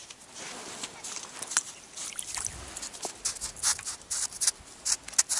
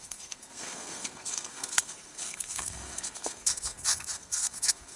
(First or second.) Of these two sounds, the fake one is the second